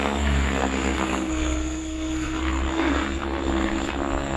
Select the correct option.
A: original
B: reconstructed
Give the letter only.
B